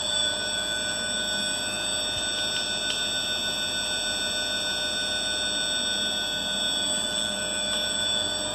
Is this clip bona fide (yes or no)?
yes